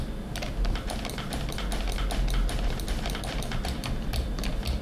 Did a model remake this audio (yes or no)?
no